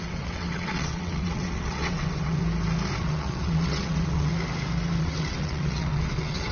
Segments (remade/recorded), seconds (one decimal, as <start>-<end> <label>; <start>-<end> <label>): 0.0-2.4 remade; 2.4-3.0 recorded; 3.0-4.3 remade; 4.3-5.0 recorded; 5.0-6.5 remade